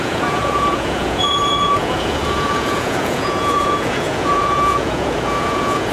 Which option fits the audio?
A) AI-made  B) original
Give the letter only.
A